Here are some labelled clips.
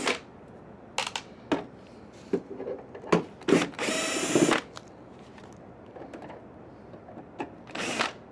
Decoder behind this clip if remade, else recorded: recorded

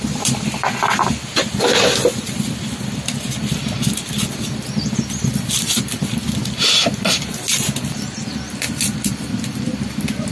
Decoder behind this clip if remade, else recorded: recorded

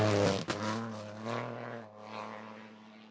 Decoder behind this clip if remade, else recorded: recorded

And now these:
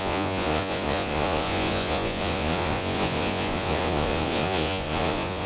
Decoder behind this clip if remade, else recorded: remade, vocoder, Vocos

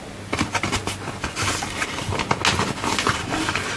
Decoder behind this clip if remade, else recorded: recorded